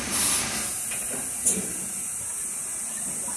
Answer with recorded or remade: recorded